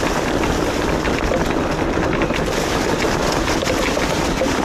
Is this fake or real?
real